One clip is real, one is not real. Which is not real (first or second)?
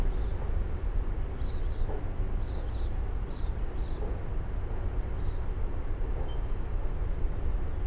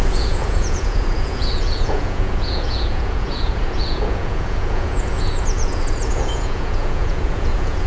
second